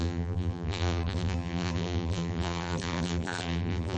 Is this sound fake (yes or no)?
yes